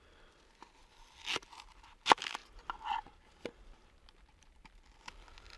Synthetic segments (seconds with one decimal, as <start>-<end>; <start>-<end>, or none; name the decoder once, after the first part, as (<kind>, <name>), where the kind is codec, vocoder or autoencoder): none